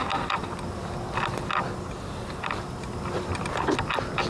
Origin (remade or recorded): recorded